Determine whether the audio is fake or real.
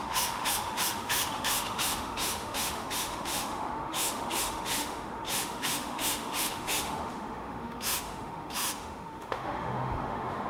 fake